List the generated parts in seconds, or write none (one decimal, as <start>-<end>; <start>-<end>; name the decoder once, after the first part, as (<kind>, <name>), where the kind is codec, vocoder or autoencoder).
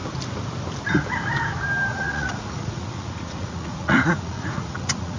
1.9-5.2 (vocoder, Vocos)